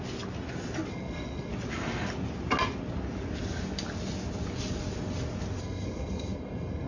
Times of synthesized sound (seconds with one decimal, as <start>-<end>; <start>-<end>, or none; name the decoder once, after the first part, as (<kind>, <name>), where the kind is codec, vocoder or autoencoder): 0.9-1.5 (codec, SNAC); 5.6-6.9